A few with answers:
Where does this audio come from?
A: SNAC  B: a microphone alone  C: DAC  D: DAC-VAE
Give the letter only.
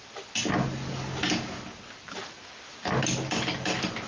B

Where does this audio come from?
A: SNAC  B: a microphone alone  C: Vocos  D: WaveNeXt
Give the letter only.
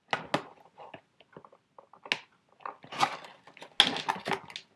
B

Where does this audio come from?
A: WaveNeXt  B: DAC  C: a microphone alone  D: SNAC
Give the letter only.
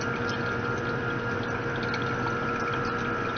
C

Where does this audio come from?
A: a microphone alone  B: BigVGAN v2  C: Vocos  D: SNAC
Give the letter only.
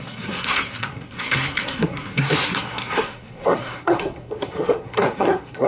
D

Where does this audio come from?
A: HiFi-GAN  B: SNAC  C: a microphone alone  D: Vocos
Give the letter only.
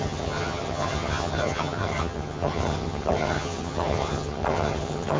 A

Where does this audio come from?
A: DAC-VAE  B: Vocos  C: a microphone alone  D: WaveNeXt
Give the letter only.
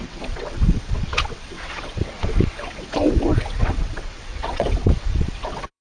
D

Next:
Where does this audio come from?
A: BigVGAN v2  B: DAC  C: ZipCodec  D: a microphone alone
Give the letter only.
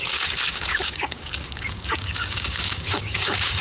B